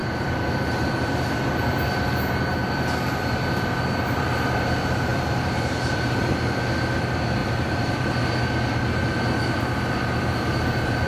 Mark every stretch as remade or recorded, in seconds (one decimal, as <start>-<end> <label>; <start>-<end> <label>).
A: 0.0-5.1 recorded; 5.1-6.4 remade; 6.4-7.4 recorded; 7.4-8.1 remade; 8.1-11.1 recorded